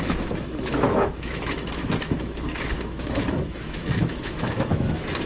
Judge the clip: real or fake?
fake